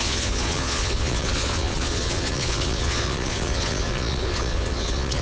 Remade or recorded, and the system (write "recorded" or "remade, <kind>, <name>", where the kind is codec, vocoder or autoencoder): remade, vocoder, Vocos